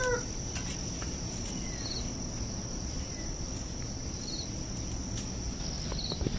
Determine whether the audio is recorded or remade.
recorded